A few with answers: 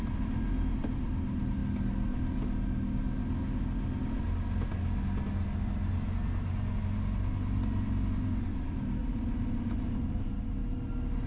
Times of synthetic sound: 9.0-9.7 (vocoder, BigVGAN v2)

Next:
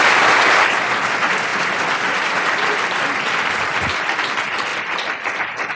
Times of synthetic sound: none

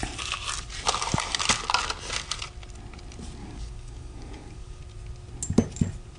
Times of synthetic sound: 3.4-4.8 (codec, DAC)

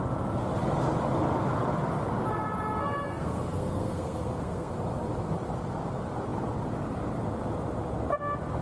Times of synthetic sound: 3.1-4.7 (codec, SNAC)

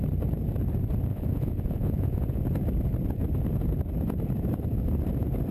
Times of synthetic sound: 1.1-2.4 (vocoder, Vocos)

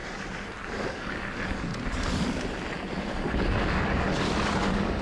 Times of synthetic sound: 0.7-1.7 (codec, DAC); 3.0-5.0

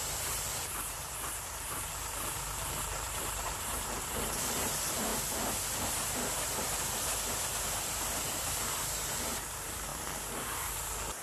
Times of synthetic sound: 0.0-5.1 (vocoder, BigVGAN v2); 7.7-9.9